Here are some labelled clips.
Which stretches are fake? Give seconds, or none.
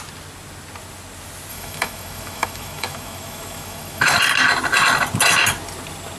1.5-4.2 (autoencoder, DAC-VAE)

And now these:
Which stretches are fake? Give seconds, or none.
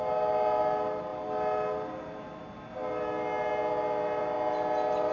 none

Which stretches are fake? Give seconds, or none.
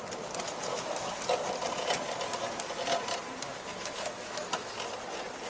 0.7-1.2 (autoencoder, DAC-VAE); 3.7-4.7